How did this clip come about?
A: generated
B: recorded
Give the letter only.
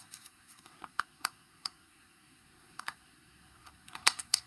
A